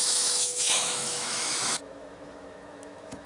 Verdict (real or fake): fake